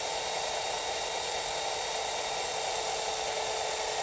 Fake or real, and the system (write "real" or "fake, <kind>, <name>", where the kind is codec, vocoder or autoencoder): real